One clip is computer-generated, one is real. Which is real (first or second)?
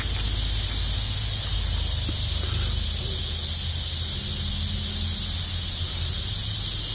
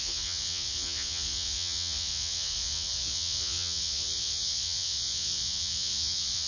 first